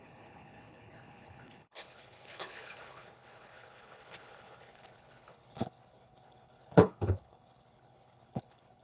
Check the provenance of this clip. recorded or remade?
remade